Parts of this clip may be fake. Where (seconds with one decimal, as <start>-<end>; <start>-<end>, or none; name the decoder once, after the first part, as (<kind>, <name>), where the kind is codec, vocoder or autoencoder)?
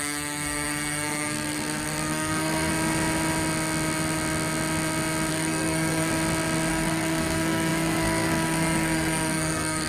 0.0-2.7 (codec, SNAC); 5.3-6.1; 6.7-9.9